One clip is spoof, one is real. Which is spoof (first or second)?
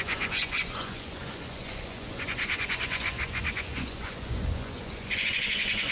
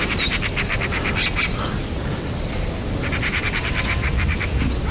first